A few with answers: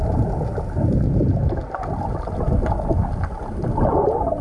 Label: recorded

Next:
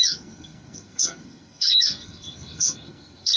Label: remade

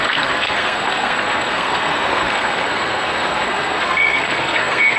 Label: remade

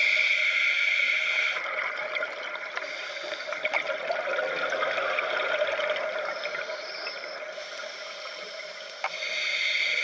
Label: recorded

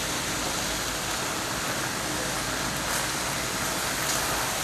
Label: recorded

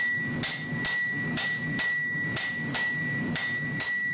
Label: recorded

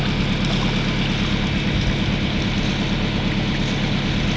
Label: recorded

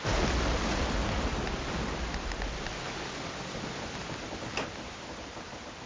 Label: recorded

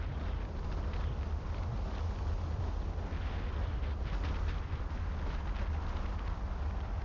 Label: recorded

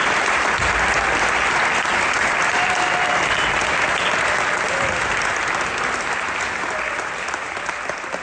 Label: recorded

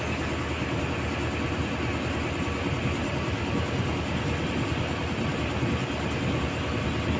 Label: recorded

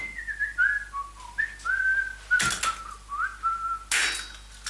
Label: recorded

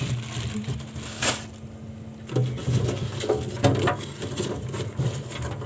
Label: recorded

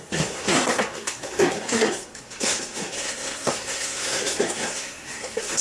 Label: remade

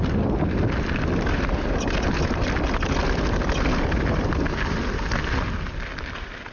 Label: recorded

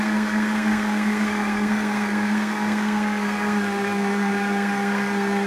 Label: remade